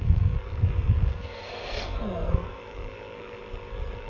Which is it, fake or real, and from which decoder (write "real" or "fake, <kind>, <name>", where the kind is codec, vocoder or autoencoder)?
fake, codec, SNAC